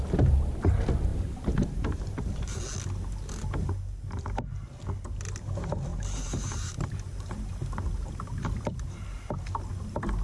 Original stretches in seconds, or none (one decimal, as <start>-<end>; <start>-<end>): 0.0-1.1; 2.6-5.9; 7.0-10.2